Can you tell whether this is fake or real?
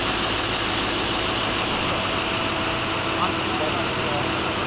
real